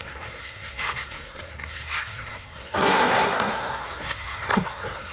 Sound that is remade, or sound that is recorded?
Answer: remade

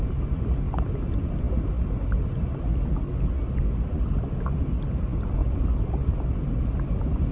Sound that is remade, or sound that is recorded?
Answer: recorded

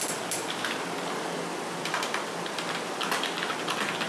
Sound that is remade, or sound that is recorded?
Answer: recorded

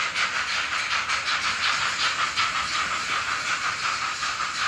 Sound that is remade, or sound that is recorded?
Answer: recorded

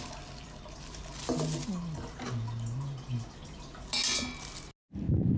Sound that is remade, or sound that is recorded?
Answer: recorded